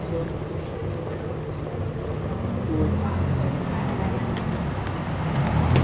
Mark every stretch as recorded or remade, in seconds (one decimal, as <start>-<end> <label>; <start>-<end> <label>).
0.0-5.8 recorded